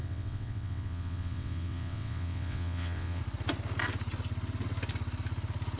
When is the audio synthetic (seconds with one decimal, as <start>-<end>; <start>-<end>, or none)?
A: 0.0-3.2